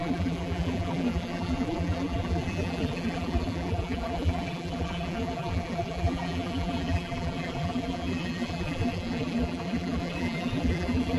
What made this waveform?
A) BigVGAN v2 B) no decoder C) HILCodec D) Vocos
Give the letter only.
A